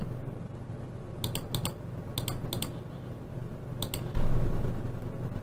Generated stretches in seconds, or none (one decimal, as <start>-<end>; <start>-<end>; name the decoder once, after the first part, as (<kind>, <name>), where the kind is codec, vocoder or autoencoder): none